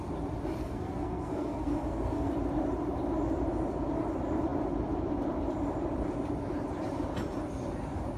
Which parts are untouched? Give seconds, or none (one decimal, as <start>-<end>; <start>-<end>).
0.0-0.6; 2.3-8.2